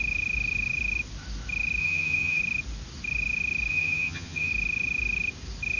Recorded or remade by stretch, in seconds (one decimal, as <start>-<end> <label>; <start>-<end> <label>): 0.0-1.8 recorded; 1.8-2.4 remade; 2.4-3.7 recorded; 3.7-4.5 remade; 4.5-5.8 recorded